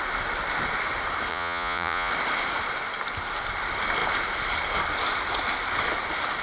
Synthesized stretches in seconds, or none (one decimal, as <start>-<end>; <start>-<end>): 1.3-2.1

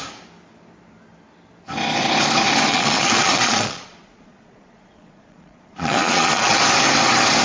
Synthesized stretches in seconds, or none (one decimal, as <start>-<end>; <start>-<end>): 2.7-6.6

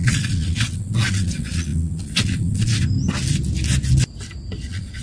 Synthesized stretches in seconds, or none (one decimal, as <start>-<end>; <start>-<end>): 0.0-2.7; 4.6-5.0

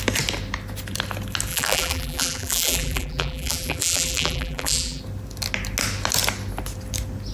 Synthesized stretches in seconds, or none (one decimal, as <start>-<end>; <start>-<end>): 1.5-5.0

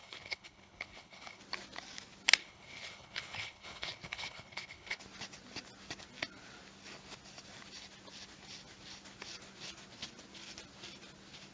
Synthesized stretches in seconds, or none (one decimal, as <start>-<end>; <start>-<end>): 0.0-1.4; 2.4-5.0

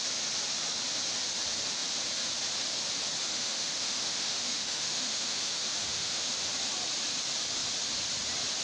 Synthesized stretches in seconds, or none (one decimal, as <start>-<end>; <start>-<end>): 3.3-6.5

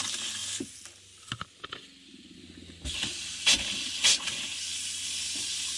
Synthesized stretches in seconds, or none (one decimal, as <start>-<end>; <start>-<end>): none

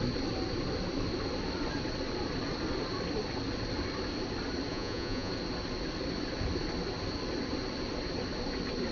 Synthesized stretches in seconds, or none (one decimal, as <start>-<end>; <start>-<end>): 4.7-5.3